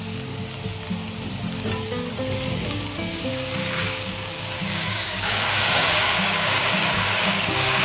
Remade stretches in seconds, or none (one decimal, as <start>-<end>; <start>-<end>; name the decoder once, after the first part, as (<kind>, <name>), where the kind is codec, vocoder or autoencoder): 3.3-7.8 (codec, DAC)